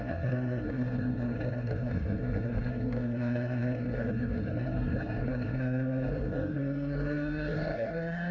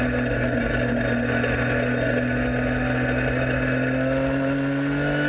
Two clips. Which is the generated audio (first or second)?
first